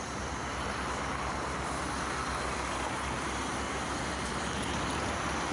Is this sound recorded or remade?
recorded